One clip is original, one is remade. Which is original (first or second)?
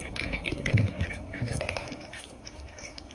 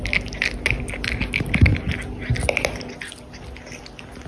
second